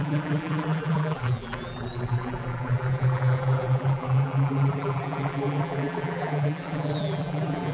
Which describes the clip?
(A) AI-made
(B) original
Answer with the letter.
A